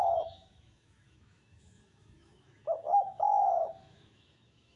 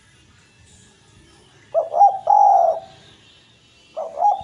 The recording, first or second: second